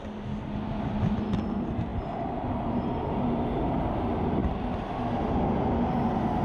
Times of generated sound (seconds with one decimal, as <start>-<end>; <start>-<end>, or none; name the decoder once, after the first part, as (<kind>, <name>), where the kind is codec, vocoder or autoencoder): 4.4-5.0 (vocoder, BigVGAN v2)